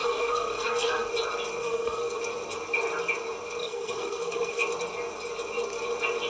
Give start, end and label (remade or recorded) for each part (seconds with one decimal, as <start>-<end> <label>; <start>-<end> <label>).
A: 0.0-1.1 remade; 1.1-1.6 recorded; 1.6-2.2 remade; 2.2-3.6 recorded; 3.6-4.6 remade; 4.6-6.3 recorded